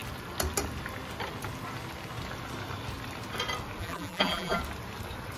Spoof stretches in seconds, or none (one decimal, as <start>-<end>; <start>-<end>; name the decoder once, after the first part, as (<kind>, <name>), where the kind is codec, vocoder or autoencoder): 3.8-4.6 (vocoder, BigVGAN v2)